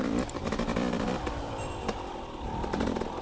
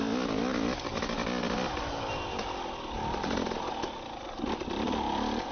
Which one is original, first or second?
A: second